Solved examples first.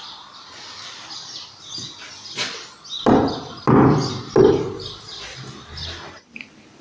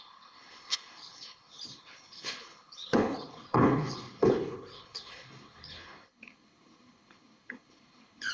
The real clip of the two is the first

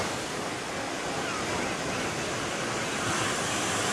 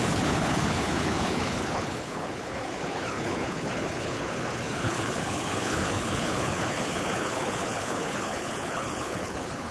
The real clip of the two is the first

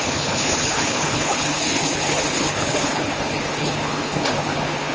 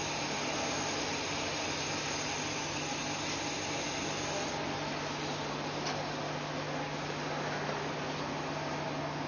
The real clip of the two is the second